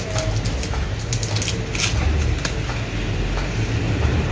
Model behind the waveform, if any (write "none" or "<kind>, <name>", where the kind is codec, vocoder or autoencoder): none